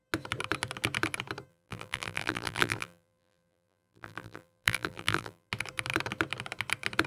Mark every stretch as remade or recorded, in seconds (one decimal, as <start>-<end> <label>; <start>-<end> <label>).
0.0-1.5 recorded; 1.5-5.5 remade; 5.5-7.1 recorded